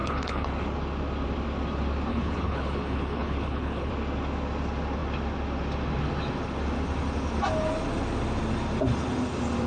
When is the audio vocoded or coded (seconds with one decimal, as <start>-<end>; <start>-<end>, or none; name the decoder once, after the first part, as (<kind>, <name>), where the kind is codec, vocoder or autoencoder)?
0.0-0.5 (codec, HILCodec); 2.1-3.9

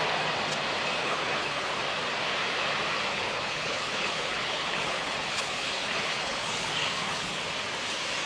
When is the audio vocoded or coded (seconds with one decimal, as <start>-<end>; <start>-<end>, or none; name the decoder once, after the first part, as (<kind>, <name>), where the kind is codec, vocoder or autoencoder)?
1.0-1.7 (codec, HILCodec); 3.1-7.4

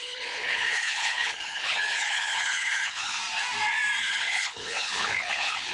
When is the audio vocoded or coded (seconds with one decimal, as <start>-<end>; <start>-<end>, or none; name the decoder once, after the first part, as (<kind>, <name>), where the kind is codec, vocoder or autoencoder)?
0.0-3.2 (codec, HILCodec); 4.0-5.7

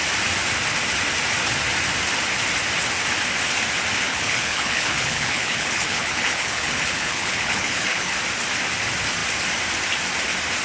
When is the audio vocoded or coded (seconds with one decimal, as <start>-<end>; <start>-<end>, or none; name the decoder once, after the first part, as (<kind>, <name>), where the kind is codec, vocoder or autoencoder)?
4.1-8.1 (codec, HILCodec)

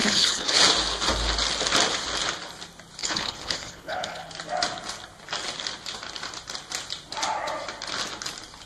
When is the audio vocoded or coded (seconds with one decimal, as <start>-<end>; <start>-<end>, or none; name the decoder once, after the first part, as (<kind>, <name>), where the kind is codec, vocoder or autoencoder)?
0.0-0.6 (codec, HILCodec); 3.0-4.3

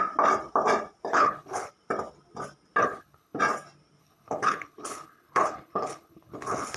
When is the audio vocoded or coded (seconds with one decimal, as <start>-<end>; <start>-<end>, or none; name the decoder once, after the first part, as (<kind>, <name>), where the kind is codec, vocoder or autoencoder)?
1.1-1.7 (codec, HILCodec); 2.8-3.4; 4.0-6.8

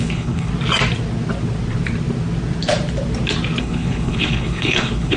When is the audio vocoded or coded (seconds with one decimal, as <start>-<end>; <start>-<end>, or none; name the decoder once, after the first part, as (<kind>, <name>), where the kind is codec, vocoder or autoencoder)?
0.0-0.5 (codec, HILCodec); 3.6-5.2

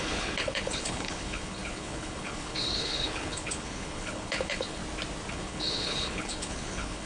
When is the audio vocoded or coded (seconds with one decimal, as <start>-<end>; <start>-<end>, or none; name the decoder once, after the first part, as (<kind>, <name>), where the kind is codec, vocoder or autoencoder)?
0.0-4.8 (codec, HILCodec); 5.3-7.1